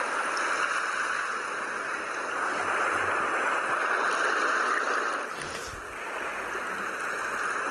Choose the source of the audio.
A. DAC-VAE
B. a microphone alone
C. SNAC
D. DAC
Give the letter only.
B